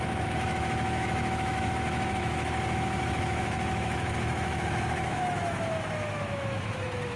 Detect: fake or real fake